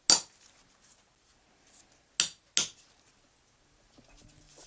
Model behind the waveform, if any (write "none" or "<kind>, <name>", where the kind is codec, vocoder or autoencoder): none